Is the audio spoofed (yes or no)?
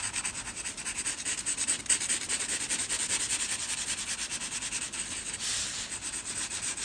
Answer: no